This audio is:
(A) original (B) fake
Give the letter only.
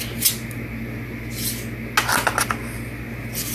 A